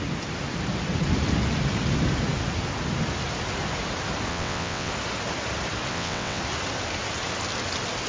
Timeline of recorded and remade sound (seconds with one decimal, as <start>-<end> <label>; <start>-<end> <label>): 0.0-4.3 recorded; 4.3-4.9 remade; 4.9-5.9 recorded; 5.9-6.4 remade; 6.4-8.1 recorded